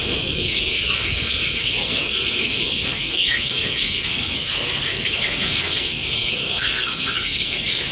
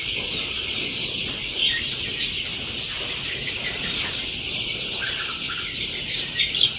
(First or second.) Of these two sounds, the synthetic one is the first